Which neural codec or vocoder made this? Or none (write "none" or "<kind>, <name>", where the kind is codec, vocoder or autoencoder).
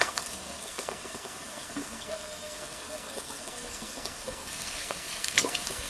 codec, SNAC